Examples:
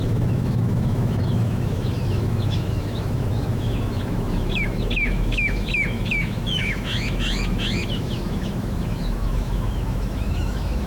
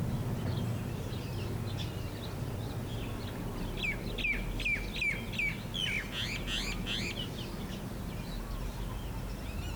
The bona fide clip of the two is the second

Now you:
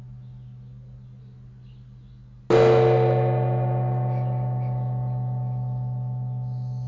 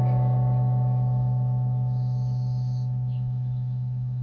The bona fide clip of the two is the first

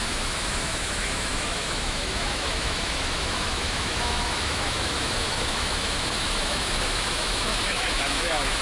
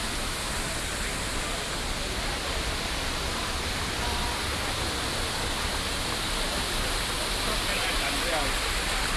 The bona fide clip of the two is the second